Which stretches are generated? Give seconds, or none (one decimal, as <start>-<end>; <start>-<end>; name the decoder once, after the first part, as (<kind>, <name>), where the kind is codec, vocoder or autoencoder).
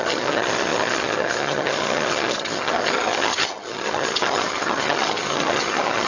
0.0-6.1 (vocoder, HiFi-GAN)